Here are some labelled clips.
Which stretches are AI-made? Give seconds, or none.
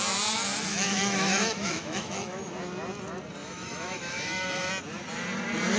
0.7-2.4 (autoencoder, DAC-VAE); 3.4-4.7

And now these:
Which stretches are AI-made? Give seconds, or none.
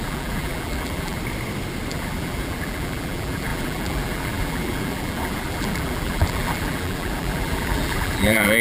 0.0-1.2 (vocoder, BigVGAN v2); 1.9-8.6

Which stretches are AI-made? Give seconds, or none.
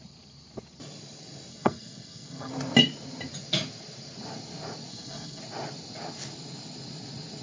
1.5-2.5 (codec, SNAC); 4.9-5.4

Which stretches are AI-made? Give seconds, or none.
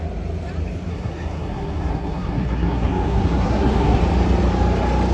0.9-4.0 (codec, SNAC)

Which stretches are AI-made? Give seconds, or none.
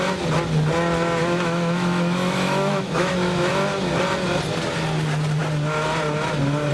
1.2-3.5 (autoencoder, DAC-VAE)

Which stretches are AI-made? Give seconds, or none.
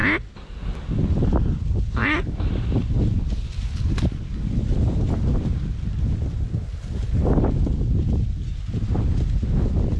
2.0-2.5 (autoencoder, DAC-VAE)